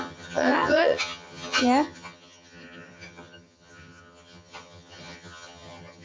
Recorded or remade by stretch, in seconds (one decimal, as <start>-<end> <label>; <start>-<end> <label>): 0.0-6.0 remade